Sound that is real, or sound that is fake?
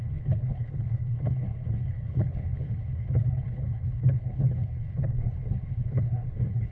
fake